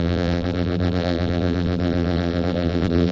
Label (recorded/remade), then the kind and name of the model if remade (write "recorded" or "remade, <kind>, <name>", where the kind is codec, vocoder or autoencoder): remade, vocoder, BigVGAN v2